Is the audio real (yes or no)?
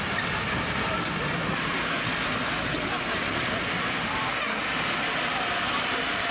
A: yes